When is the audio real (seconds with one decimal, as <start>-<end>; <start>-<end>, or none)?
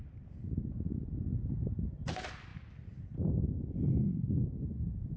0.0-5.2